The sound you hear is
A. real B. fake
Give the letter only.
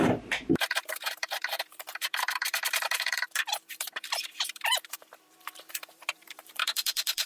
B